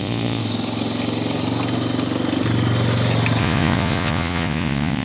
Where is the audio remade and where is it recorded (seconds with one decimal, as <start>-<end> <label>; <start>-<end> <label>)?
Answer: 0.0-0.4 remade; 0.4-3.4 recorded; 3.4-5.0 remade